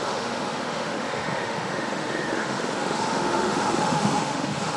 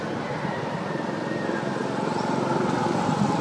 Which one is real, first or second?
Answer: second